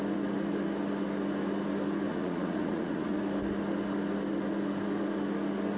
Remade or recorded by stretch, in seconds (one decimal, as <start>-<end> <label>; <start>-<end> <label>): 0.0-2.1 recorded; 2.1-3.2 remade; 3.2-5.8 recorded